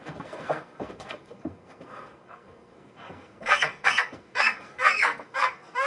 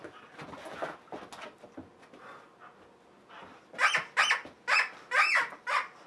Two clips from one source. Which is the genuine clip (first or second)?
second